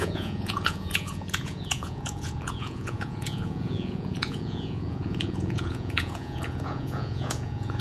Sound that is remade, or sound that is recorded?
remade